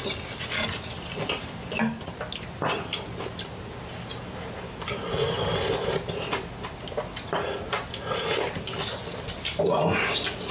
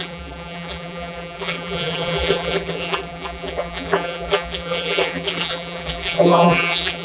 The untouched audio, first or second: first